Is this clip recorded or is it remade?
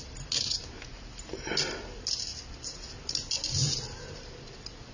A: recorded